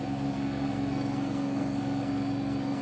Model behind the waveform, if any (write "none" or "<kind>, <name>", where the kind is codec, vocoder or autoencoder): codec, SNAC